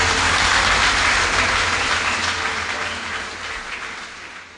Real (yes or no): yes